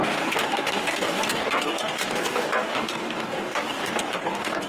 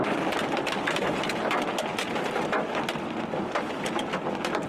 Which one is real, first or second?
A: second